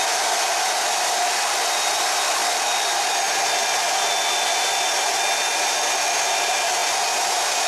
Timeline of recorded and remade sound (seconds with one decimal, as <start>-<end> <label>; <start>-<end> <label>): 0.0-7.7 recorded